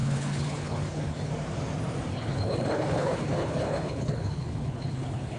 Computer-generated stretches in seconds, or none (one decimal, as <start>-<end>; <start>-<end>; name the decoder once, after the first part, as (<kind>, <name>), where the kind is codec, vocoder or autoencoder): 0.0-1.3 (codec, HILCodec); 2.1-5.4